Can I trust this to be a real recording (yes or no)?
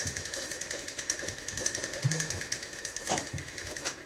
no